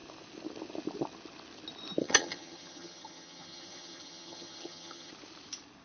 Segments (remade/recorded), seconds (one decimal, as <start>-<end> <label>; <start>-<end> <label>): 0.0-2.0 recorded; 2.0-5.1 remade; 5.1-5.8 recorded